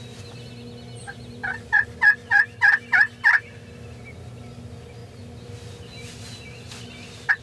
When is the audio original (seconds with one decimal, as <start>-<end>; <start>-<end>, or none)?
0.0-7.4